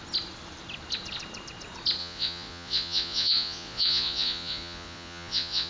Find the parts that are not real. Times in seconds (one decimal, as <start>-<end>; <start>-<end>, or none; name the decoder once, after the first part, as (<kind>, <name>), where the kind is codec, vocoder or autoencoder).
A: 2.0-5.7 (vocoder, Vocos)